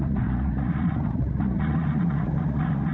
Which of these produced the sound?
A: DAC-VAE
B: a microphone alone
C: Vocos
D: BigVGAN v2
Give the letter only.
C